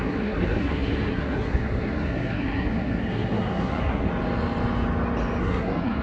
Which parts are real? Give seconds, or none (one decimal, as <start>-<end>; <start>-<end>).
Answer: 4.1-5.4